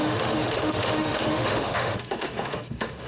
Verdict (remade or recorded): remade